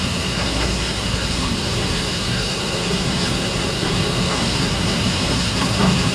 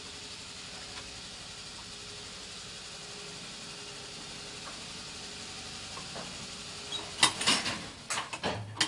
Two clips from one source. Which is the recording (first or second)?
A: second